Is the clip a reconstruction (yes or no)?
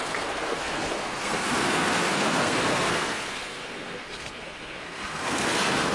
yes